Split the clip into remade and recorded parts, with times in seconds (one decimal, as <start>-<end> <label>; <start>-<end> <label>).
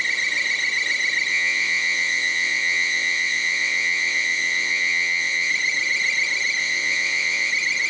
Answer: 0.0-1.3 recorded; 1.3-5.5 remade; 5.5-6.6 recorded; 6.6-7.5 remade; 7.5-7.9 recorded